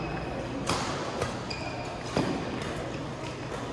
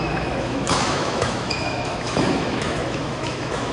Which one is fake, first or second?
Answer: second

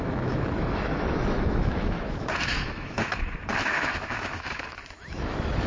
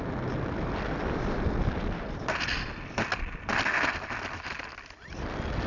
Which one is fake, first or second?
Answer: first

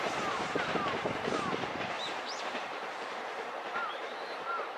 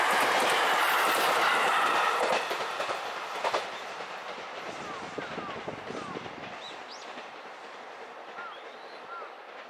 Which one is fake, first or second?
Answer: first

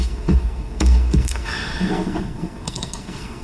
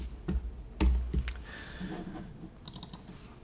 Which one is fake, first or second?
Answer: first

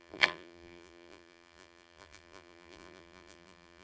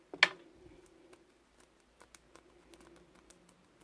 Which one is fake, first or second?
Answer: first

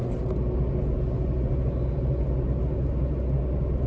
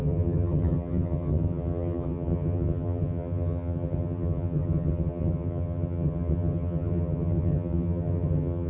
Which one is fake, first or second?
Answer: second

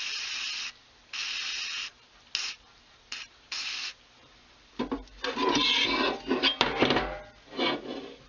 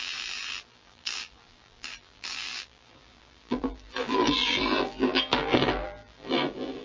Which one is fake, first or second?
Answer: second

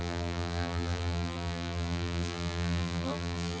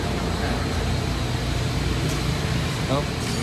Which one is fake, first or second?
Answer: first